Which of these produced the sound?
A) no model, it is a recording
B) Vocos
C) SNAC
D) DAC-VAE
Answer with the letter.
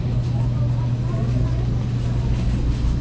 A